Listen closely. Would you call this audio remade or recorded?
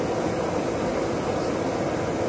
recorded